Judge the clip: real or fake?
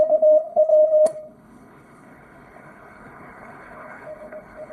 fake